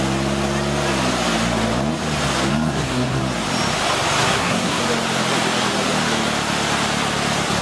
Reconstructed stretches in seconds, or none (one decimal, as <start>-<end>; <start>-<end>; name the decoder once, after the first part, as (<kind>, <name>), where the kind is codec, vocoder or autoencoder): 2.5-3.2 (codec, SNAC); 4.2-4.8